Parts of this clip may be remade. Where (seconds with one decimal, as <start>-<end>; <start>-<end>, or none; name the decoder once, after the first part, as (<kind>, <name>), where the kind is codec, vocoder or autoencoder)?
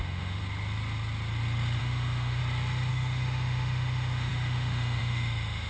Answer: 0.0-0.4 (autoencoder, DAC-VAE); 1.8-2.4; 2.9-5.7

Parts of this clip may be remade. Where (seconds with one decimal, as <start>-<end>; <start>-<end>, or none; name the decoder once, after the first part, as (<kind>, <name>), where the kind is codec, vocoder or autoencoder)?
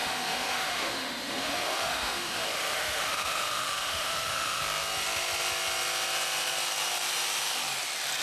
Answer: 0.0-4.6 (autoencoder, DAC-VAE)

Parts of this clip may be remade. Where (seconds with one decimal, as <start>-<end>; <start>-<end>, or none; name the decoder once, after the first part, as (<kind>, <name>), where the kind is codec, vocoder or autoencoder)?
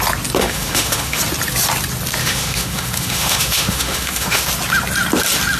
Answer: 0.4-1.2 (autoencoder, DAC-VAE); 2.2-4.5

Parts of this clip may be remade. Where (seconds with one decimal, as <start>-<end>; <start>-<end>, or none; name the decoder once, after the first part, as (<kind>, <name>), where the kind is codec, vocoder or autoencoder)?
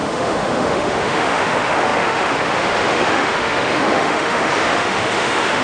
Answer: 0.0-5.6 (autoencoder, DAC-VAE)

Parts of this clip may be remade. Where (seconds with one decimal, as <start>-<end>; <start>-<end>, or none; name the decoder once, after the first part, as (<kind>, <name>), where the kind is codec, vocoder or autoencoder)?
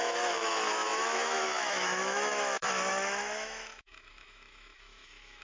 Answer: 0.0-5.4 (autoencoder, DAC-VAE)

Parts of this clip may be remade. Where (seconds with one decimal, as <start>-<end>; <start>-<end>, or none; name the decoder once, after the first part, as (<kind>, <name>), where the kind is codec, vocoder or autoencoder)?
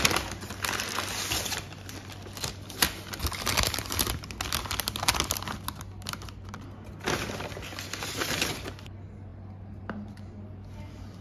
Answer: none